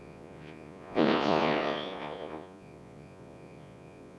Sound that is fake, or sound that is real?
fake